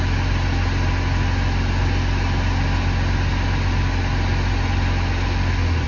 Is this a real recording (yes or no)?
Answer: yes